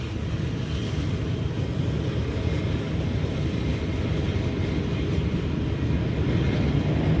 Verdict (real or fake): real